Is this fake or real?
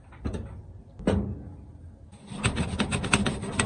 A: real